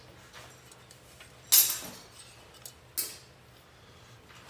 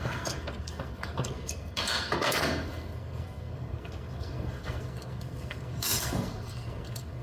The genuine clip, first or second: first